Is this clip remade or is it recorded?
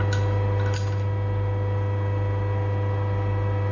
recorded